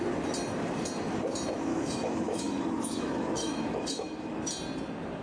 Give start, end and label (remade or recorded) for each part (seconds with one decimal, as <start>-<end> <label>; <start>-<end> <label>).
0.0-1.7 recorded; 1.7-4.5 remade; 4.5-5.2 recorded